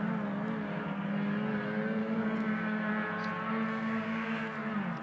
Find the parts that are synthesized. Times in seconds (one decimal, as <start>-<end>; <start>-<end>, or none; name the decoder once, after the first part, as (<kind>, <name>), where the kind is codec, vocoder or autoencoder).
2.0-2.9 (codec, DAC); 3.7-4.4